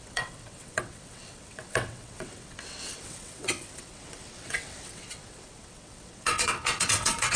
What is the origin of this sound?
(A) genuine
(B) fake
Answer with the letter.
B